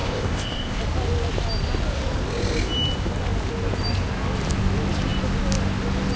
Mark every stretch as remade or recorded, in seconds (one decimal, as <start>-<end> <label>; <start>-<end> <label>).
0.0-0.8 remade; 0.8-6.2 recorded